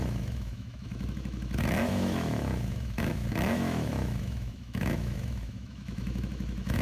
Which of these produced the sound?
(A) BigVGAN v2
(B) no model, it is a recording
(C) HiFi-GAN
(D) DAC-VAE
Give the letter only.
D